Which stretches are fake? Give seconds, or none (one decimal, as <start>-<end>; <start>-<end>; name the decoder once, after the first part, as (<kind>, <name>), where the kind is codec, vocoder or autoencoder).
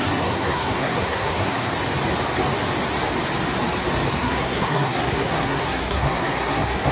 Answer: 0.0-1.7 (codec, SNAC); 4.1-6.9